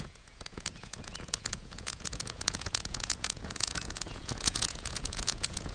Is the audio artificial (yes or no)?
yes